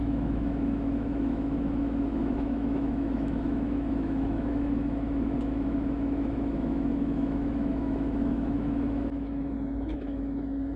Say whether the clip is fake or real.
fake